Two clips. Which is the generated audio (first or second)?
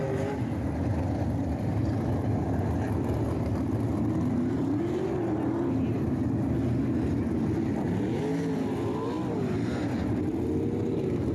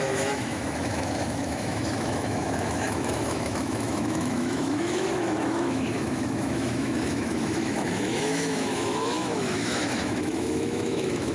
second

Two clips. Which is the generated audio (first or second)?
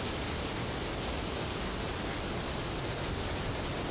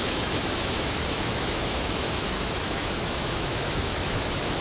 second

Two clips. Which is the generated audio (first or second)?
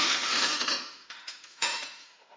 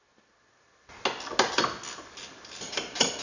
first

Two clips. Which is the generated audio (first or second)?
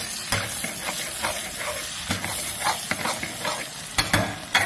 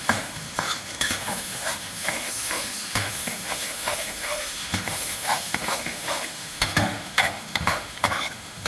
second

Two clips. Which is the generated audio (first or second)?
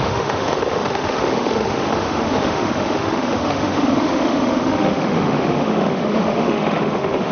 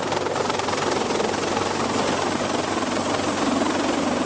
first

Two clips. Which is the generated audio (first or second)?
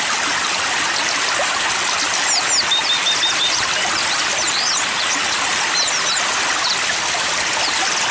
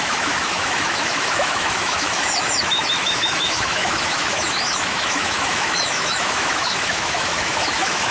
second